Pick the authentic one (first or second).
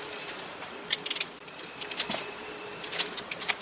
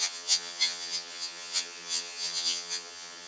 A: first